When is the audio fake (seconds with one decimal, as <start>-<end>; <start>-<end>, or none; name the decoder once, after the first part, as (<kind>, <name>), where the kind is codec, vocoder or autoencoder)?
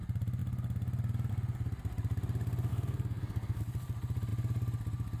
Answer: 2.7-3.6 (codec, SNAC)